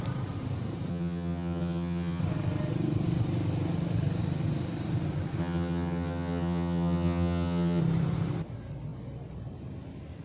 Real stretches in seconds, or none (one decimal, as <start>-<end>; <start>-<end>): 0.0-0.9; 2.2-5.4; 7.8-10.2